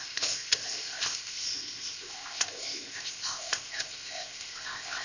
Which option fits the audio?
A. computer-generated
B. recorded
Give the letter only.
A